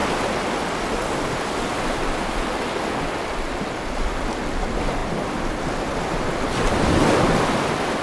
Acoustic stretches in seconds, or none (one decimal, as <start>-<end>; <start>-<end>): 0.0-8.0